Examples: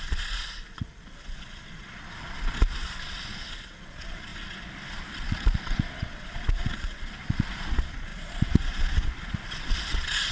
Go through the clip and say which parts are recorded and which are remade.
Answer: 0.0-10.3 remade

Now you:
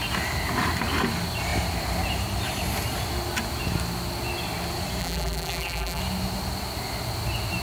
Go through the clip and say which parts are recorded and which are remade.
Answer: 0.0-5.0 recorded; 5.0-6.0 remade; 6.0-7.6 recorded

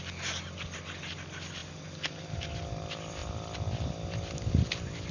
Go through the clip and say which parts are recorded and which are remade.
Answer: 0.0-5.1 recorded